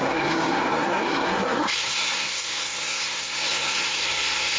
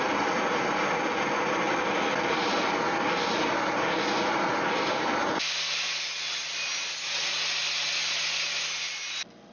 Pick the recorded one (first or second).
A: second